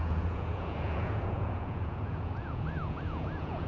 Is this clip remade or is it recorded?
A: remade